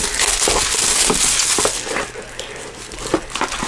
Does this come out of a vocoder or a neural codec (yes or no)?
no